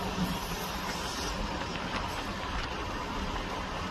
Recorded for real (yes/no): yes